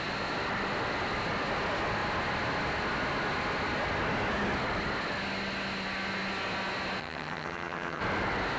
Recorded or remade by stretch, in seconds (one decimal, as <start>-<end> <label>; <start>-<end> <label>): 0.0-7.0 recorded; 7.0-8.0 remade; 8.0-8.6 recorded